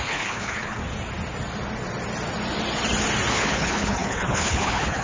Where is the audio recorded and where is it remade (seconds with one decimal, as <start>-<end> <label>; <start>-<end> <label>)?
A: 0.0-0.8 remade; 0.8-3.3 recorded; 3.3-5.0 remade